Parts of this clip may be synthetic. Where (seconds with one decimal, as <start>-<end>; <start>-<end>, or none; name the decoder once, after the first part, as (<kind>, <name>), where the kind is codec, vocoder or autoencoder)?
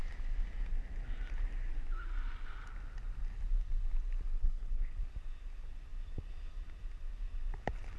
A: 4.3-5.0 (codec, HILCodec)